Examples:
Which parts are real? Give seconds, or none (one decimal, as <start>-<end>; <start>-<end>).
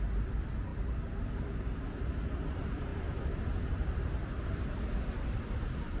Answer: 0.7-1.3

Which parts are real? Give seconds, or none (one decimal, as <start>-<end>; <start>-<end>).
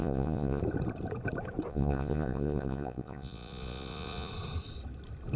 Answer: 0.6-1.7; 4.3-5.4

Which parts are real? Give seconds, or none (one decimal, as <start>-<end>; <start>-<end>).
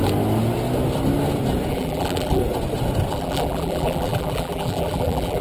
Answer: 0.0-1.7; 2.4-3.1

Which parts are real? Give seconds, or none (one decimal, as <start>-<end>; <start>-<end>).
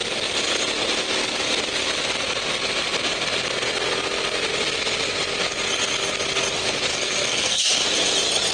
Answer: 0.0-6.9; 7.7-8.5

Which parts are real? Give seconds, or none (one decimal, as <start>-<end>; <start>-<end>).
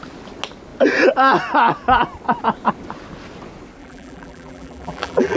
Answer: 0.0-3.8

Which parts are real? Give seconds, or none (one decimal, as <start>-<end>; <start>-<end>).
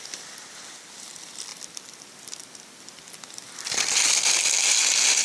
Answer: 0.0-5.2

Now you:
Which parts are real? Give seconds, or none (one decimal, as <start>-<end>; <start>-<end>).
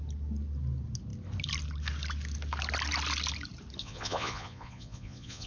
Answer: 0.0-3.8